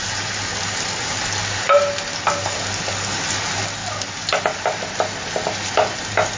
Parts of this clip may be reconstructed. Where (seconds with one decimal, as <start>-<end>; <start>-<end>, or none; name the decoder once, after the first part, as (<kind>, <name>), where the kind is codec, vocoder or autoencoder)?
none